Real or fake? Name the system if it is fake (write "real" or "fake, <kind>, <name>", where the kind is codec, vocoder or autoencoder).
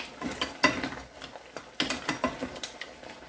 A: real